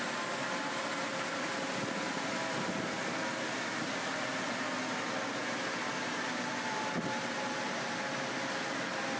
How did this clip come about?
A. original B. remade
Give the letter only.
A